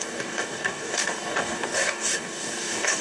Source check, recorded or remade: remade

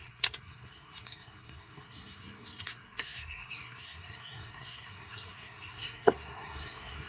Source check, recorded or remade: remade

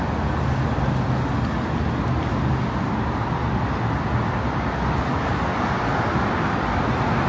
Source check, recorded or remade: recorded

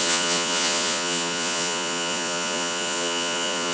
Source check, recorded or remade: remade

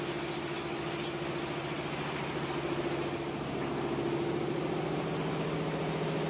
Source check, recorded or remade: recorded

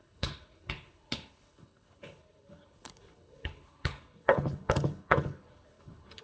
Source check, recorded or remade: remade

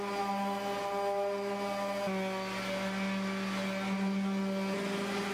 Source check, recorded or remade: recorded